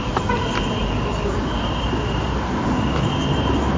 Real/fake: real